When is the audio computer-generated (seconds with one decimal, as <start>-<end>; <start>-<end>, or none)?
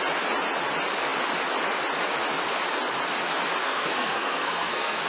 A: 3.6-5.1